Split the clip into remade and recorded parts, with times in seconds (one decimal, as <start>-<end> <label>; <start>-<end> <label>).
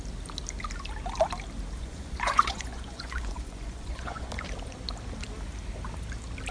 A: 0.0-1.8 recorded; 1.8-4.3 remade; 4.3-6.5 recorded